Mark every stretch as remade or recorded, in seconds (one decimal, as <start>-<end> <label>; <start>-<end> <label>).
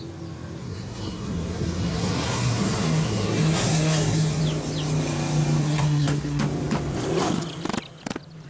0.0-0.6 recorded; 0.6-4.4 remade; 4.4-5.6 recorded; 5.6-6.4 remade; 6.4-8.5 recorded